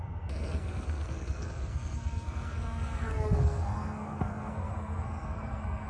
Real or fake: fake